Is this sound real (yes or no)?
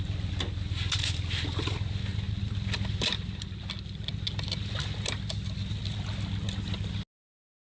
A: yes